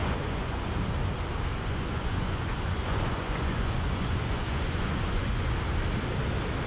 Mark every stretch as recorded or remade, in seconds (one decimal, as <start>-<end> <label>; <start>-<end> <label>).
0.0-0.7 remade; 0.7-1.5 recorded; 1.5-5.5 remade; 5.5-6.7 recorded